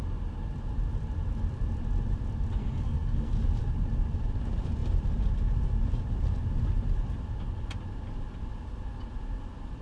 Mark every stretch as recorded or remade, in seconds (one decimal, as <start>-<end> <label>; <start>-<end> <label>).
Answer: 0.0-2.6 recorded; 2.6-3.3 remade; 3.3-9.8 recorded